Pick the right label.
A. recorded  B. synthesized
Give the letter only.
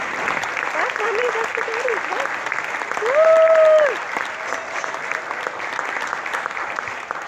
A